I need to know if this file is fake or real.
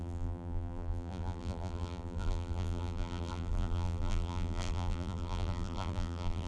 fake